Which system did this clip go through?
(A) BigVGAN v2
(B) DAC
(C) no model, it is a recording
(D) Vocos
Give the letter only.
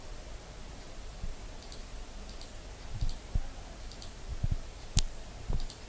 C